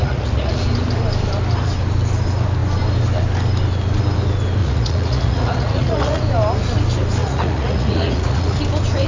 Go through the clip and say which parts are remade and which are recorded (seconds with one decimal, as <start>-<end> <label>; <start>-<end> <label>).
0.0-0.6 remade; 0.6-4.6 recorded; 4.6-6.2 remade; 6.2-7.2 recorded; 7.2-8.6 remade; 8.6-9.1 recorded